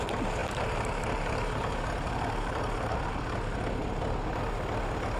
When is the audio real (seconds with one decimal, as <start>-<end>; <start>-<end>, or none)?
0.0-0.4; 3.1-5.2